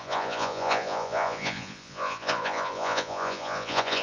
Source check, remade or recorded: remade